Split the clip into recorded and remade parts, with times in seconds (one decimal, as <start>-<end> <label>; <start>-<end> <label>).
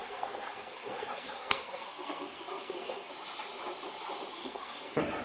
0.0-3.1 remade; 3.1-4.4 recorded; 4.4-5.2 remade